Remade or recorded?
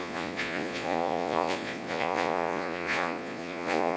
remade